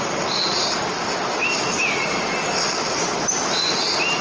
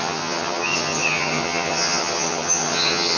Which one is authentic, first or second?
first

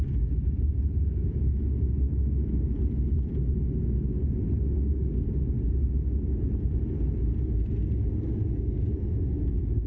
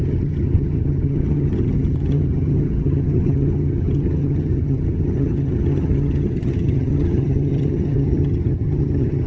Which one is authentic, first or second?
first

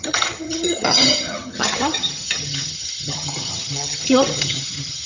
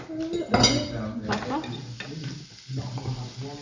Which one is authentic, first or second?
second